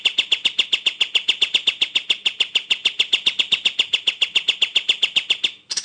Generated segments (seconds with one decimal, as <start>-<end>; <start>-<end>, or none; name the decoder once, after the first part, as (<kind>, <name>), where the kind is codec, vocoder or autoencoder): none